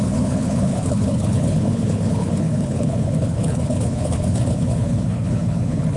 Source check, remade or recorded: remade